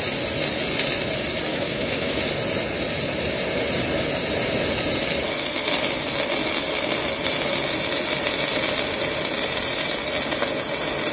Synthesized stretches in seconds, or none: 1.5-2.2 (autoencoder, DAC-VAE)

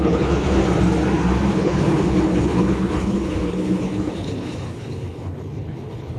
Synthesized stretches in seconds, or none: 0.0-0.6 (codec, HILCodec); 1.5-6.2

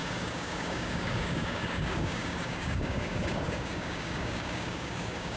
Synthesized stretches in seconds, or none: 0.0-5.4 (codec, DAC)

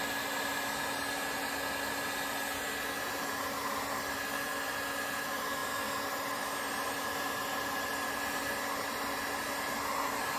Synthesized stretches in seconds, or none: none

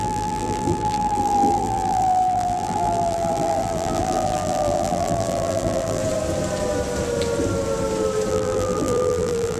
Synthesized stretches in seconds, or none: 0.0-6.0 (vocoder, BigVGAN v2); 8.3-9.6

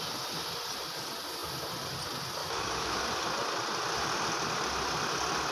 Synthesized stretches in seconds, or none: 2.4-3.0 (autoencoder, DAC-VAE)

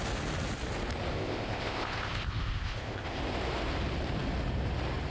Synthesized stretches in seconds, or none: 1.1-3.2 (codec, ZipCodec)

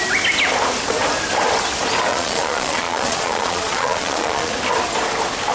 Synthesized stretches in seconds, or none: 2.1-4.5 (vocoder, Vocos)